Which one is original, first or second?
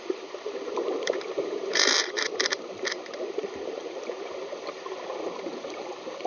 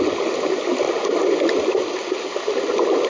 second